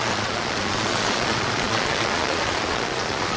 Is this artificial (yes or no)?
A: yes